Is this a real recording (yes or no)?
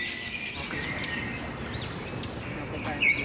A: yes